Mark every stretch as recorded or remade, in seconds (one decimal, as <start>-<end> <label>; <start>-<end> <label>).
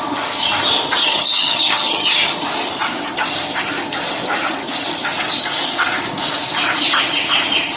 0.0-1.0 recorded; 1.0-2.3 remade; 2.3-7.8 recorded